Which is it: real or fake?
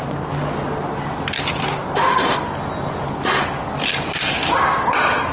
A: real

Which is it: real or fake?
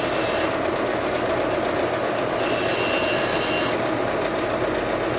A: real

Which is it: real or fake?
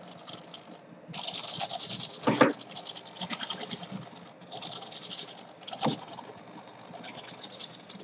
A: real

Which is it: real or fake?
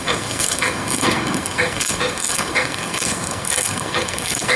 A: fake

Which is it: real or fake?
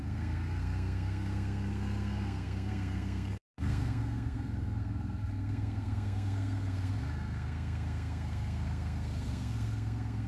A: fake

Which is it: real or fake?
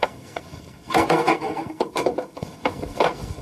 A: fake